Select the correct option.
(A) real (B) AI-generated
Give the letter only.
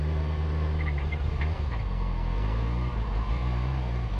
B